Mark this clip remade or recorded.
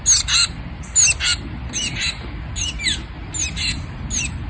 recorded